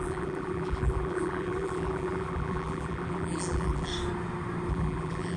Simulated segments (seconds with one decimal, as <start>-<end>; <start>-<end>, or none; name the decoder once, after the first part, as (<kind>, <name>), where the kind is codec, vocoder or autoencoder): 0.0-3.9 (vocoder, BigVGAN v2); 4.7-5.4